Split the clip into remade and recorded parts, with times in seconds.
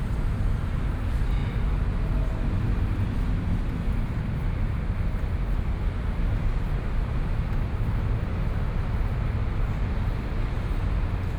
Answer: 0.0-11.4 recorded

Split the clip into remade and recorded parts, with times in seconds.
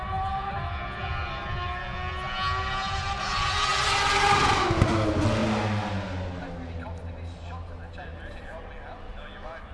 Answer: 0.0-9.7 recorded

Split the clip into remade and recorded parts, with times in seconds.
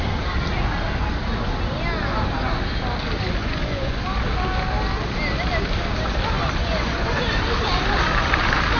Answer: 0.0-3.4 recorded; 3.4-4.0 remade; 4.0-6.6 recorded; 6.6-7.2 remade; 7.2-8.8 recorded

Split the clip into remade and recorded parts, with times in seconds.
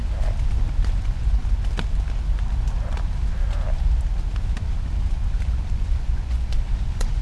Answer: 0.0-1.0 recorded; 1.0-1.4 remade; 1.4-5.7 recorded; 5.7-7.2 remade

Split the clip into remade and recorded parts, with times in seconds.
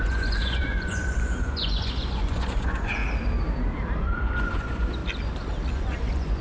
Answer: 0.0-3.0 remade; 3.0-4.0 recorded; 4.0-5.0 remade; 5.0-5.7 recorded; 5.7-6.4 remade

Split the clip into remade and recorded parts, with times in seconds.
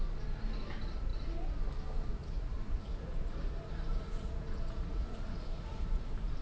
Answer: 0.0-2.2 recorded; 2.2-6.0 remade; 6.0-6.4 recorded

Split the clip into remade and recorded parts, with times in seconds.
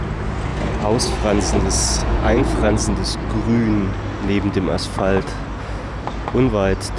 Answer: 0.0-2.0 recorded; 2.0-2.9 remade; 2.9-7.0 recorded